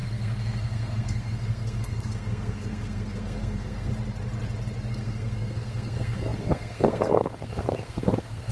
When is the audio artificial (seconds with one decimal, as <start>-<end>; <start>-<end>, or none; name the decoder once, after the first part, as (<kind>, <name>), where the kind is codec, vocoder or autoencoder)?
0.0-3.9 (codec, SNAC); 4.9-8.5